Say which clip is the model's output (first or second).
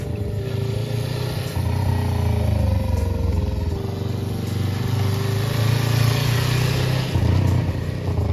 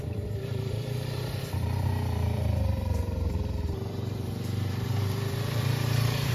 second